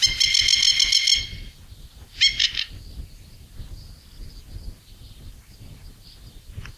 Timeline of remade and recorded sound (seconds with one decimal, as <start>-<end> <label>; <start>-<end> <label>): 0.0-6.8 recorded